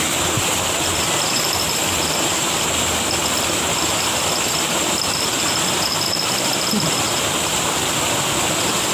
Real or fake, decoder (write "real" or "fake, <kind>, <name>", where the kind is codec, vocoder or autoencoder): real